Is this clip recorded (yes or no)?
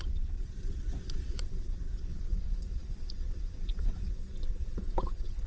no